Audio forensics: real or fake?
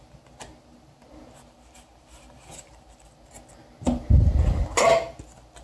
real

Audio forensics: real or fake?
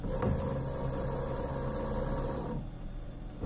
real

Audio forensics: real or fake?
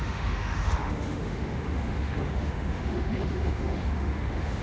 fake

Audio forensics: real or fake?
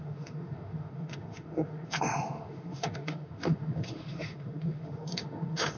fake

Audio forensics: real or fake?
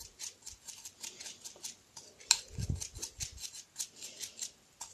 real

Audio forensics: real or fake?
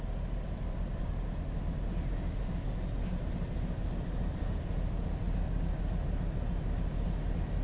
real